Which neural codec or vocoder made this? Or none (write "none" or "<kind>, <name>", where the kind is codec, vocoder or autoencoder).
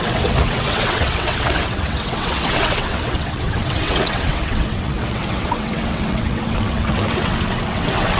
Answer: vocoder, WaveNeXt